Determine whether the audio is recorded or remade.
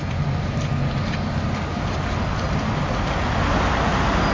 recorded